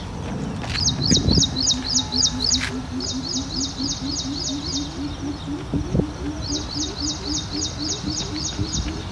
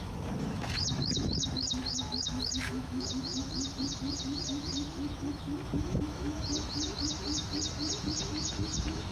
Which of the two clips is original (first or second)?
first